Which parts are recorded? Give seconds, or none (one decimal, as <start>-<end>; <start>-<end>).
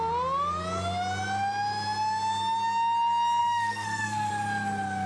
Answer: 0.0-3.4; 4.3-5.1